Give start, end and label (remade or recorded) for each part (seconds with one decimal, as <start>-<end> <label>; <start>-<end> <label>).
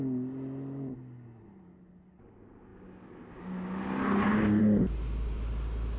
0.0-6.0 recorded